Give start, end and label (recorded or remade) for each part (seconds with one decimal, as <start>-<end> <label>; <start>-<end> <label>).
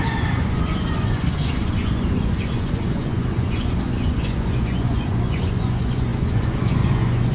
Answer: 0.0-7.3 remade